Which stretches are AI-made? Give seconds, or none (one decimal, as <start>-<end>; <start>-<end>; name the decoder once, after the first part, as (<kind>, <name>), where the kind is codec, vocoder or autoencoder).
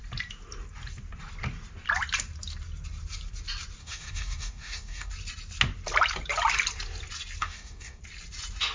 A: 3.8-5.1 (codec, DAC); 7.4-8.0